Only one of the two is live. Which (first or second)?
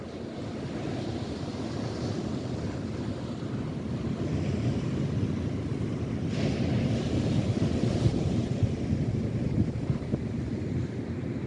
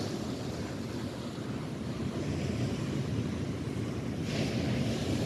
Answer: second